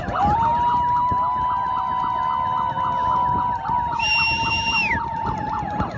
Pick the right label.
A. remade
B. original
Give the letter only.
B